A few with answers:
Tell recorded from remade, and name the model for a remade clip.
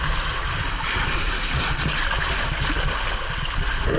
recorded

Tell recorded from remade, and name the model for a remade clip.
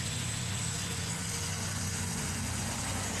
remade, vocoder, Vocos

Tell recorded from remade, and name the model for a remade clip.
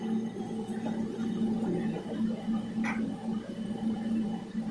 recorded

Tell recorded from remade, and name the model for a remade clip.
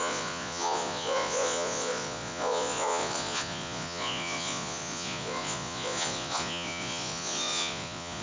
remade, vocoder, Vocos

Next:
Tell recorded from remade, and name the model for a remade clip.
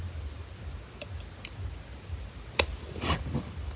recorded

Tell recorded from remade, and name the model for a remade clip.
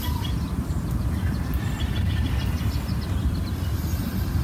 recorded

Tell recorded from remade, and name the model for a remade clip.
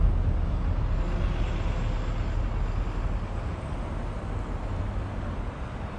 recorded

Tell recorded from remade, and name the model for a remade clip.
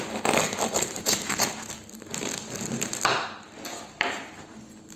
recorded